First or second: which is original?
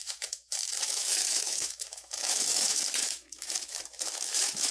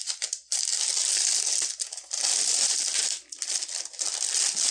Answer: second